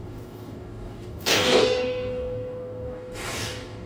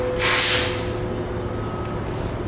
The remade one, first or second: first